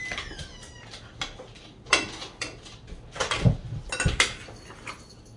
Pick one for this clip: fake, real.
real